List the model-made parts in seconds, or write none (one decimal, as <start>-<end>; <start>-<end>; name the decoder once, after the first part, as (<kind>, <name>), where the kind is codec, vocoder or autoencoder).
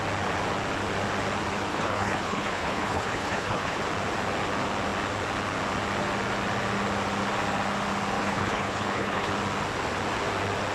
1.7-3.8 (codec, HILCodec); 8.2-9.3